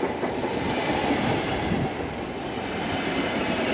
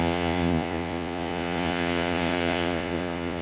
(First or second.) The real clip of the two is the first